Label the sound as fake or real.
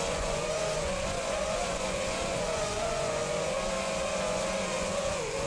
fake